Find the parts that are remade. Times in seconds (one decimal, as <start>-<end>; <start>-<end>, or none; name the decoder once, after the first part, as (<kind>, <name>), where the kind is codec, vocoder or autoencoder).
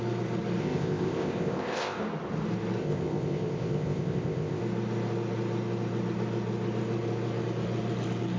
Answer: 0.6-2.0 (codec, ZipCodec); 2.8-4.6